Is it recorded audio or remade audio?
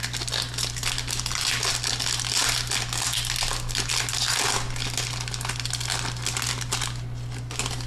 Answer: recorded